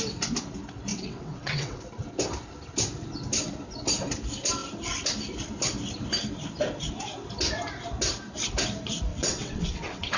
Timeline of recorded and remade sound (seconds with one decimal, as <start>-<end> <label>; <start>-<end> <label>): 0.0-0.9 recorded; 0.9-1.8 remade; 1.8-9.1 recorded; 9.1-10.2 remade